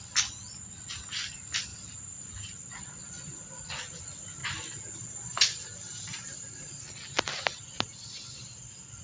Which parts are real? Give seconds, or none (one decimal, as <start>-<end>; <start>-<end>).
0.0-1.7; 2.7-4.4; 6.7-9.0